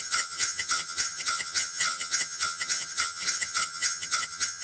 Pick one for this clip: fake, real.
fake